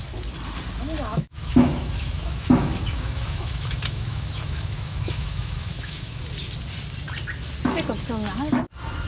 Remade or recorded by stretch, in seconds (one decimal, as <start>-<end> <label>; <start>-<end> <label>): 0.0-1.1 recorded; 1.1-6.2 remade; 6.2-9.1 recorded